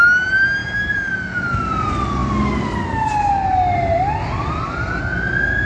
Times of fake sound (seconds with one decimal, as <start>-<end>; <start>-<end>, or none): none